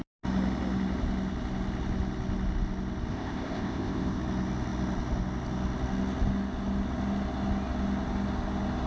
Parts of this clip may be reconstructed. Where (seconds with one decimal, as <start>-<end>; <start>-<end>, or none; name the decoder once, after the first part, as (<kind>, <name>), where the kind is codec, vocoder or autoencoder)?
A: 3.1-4.2 (codec, ZipCodec)

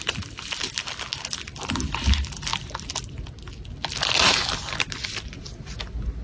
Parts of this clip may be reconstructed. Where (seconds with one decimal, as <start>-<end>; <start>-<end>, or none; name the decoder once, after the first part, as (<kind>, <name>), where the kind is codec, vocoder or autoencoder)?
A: none

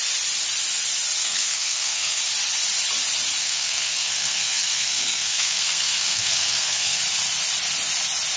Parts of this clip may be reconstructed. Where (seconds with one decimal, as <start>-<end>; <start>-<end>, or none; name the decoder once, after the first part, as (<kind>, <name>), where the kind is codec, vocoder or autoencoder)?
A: 1.2-2.2 (codec, SNAC); 3.4-7.0

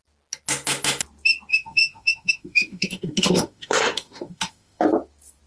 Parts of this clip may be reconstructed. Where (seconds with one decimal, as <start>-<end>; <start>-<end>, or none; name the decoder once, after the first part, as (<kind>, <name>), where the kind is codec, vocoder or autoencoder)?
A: 1.5-4.8 (autoencoder, DAC-VAE)

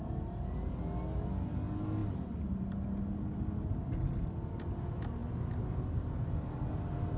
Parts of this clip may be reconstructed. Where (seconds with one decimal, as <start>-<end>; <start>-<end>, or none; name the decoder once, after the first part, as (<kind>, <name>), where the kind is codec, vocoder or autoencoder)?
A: none

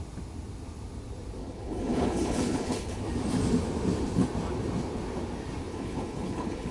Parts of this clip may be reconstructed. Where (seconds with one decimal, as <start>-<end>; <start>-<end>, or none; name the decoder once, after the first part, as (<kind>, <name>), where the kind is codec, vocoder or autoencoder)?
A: 1.4-3.0 (codec, HILCodec); 5.7-6.7

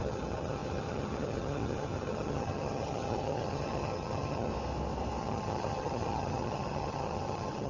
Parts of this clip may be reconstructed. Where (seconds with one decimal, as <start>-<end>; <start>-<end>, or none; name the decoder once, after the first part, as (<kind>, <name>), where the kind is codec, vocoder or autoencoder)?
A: 0.0-4.5 (vocoder, HiFi-GAN); 5.2-7.7